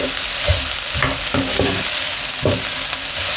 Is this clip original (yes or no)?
yes